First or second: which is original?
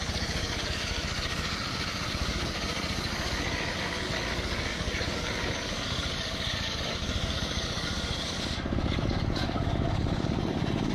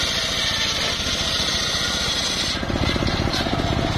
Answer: second